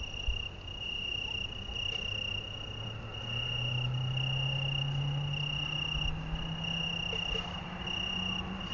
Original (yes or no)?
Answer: yes